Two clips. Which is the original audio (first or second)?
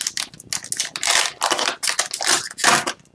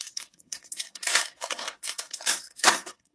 first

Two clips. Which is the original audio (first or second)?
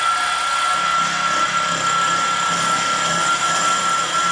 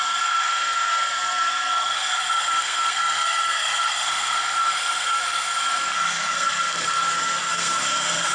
first